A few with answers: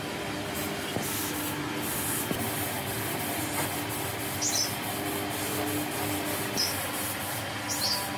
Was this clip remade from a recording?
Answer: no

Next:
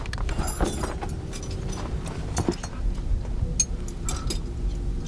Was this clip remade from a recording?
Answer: no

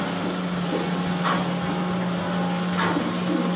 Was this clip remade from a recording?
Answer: no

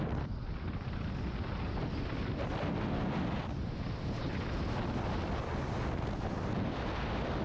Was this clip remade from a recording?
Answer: no